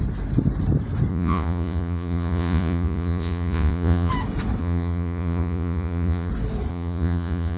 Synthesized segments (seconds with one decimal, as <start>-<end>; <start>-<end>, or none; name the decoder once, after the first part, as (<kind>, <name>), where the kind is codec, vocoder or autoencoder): 1.1-4.1 (vocoder, Vocos); 4.6-6.3; 6.7-7.6